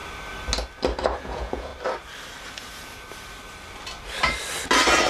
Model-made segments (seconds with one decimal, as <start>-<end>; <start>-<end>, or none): 1.2-1.7